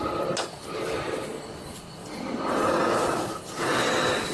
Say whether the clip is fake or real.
real